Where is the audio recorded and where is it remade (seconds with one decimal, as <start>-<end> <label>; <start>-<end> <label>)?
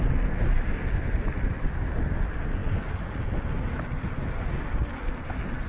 0.0-5.7 recorded